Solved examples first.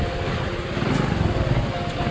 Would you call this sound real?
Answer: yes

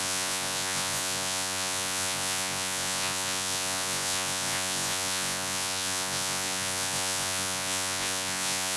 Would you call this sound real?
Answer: no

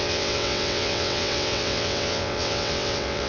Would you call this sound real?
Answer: no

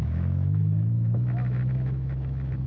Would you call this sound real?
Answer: no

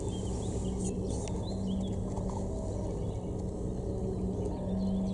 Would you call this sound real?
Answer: yes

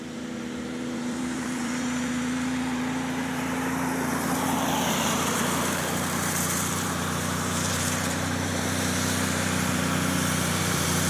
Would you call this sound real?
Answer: no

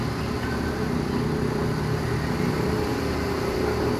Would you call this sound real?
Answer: yes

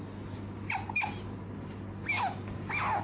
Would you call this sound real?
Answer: yes